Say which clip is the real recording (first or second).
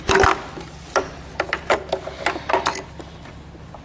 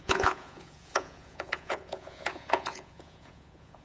first